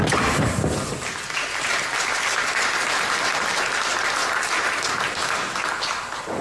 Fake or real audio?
real